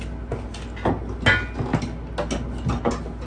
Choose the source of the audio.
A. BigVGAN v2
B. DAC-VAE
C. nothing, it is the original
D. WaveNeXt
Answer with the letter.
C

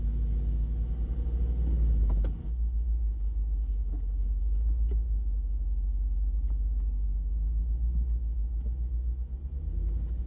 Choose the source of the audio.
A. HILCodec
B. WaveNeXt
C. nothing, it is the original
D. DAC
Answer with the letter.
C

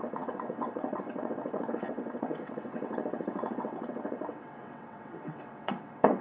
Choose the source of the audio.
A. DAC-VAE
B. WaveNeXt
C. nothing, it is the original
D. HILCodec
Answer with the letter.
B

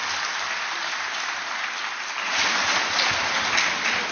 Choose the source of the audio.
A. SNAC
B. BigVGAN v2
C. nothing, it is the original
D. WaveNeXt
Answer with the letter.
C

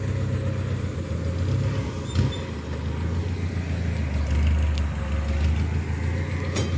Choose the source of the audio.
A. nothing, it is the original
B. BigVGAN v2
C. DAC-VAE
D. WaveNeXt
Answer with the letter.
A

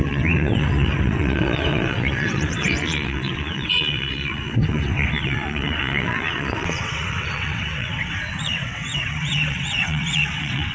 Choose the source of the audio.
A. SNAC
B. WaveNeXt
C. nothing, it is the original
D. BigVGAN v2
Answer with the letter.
B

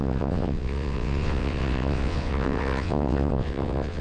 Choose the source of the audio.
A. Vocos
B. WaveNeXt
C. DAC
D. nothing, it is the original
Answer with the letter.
B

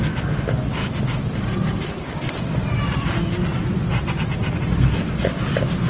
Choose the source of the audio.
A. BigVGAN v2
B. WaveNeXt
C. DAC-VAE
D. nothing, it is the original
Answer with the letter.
D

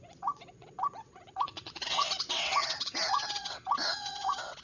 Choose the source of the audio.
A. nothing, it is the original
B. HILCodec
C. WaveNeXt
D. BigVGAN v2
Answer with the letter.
C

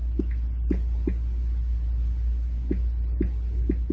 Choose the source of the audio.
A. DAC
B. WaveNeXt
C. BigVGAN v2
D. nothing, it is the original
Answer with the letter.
D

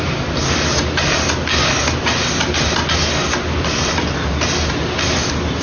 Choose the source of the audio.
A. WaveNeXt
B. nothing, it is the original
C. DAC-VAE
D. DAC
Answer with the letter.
B